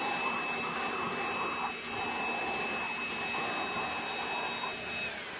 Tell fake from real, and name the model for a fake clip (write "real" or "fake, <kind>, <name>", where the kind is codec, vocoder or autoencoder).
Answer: real